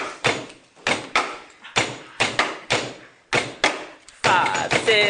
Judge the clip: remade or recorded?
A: recorded